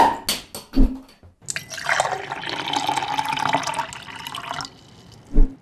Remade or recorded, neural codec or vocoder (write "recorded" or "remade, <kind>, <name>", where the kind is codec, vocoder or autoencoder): recorded